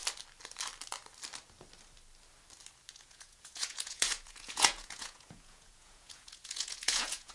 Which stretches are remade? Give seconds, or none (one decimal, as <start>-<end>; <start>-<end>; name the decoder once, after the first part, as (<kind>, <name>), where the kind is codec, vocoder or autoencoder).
2.9-7.3 (vocoder, Vocos)